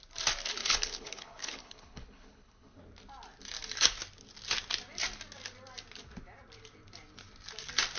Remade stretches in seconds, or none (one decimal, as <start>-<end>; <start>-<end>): 0.6-2.8